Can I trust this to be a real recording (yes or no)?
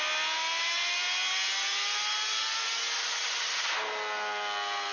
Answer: yes